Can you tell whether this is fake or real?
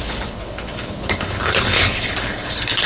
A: fake